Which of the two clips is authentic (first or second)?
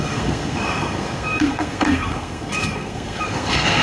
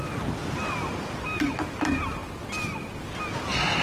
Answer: second